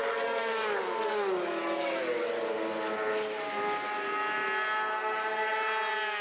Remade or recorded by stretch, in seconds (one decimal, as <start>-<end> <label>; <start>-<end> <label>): 0.0-2.0 remade; 2.0-6.2 recorded